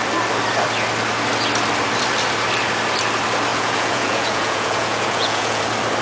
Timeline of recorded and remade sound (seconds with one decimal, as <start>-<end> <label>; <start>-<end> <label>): 0.0-3.5 recorded; 3.5-5.6 remade; 5.6-6.0 recorded